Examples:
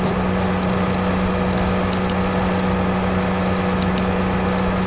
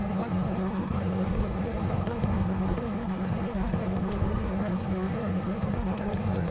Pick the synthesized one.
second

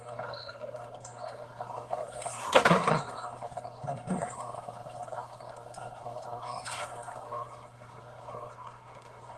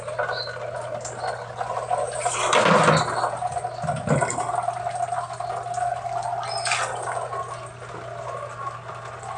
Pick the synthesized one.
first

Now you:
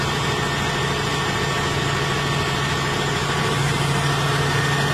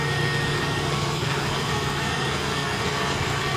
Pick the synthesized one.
second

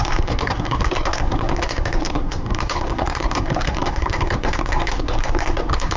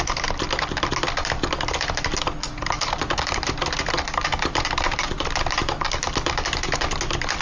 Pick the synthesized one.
first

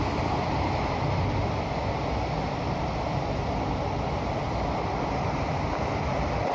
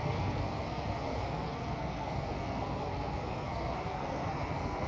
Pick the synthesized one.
second